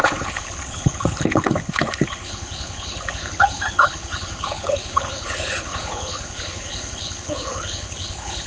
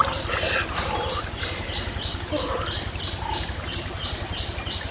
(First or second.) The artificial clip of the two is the first